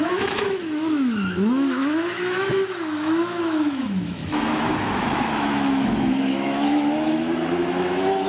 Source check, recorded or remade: remade